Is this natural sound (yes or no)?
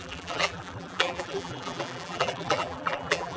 no